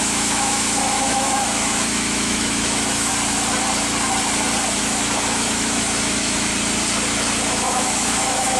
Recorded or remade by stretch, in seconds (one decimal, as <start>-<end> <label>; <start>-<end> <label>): 0.0-3.1 remade; 3.1-4.8 recorded; 4.8-6.5 remade; 6.5-7.5 recorded; 7.5-8.6 remade

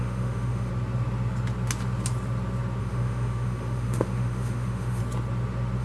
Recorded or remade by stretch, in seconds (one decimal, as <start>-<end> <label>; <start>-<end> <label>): 0.0-0.7 remade; 0.7-2.8 recorded; 2.8-5.0 remade; 5.0-5.8 recorded

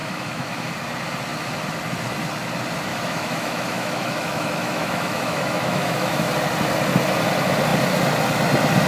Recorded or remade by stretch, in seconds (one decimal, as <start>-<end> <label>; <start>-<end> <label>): 0.0-0.7 remade; 0.7-2.9 recorded; 2.9-6.3 remade; 6.3-8.9 recorded